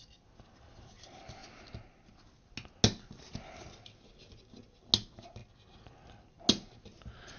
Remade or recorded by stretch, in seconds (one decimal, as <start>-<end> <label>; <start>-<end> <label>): 0.0-7.4 recorded